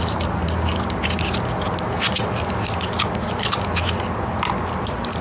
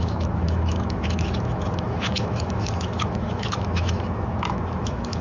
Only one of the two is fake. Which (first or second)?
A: second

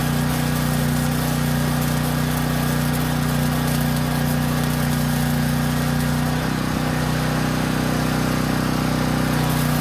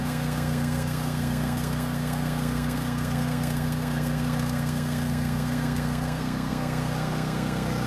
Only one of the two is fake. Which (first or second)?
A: second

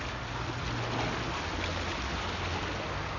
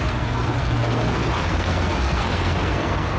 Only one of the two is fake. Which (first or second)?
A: second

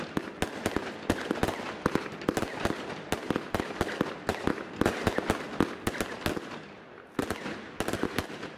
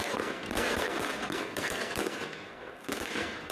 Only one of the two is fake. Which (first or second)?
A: second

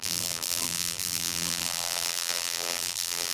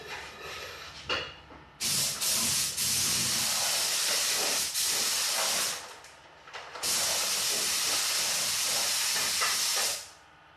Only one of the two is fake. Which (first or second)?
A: first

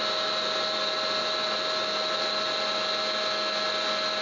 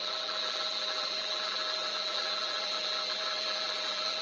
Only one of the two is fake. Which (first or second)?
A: second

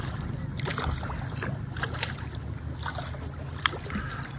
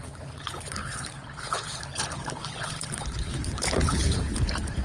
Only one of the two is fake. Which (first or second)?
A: second